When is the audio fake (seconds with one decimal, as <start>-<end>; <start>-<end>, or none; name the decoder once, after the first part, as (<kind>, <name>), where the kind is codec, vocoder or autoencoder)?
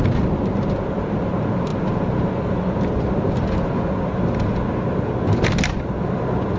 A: none